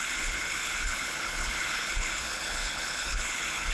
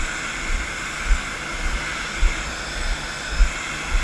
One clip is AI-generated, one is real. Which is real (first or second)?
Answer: second